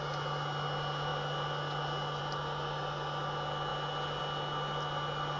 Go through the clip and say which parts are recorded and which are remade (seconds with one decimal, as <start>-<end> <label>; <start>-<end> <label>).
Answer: 0.0-5.4 recorded